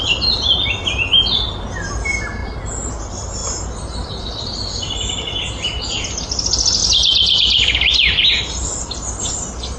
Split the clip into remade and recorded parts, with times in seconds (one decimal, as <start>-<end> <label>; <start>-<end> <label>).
0.0-9.8 recorded